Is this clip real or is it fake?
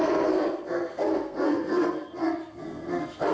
fake